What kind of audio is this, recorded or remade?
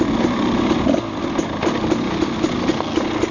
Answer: recorded